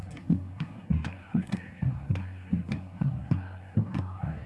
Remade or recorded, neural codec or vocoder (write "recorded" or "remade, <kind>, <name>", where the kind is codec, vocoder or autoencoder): remade, codec, SNAC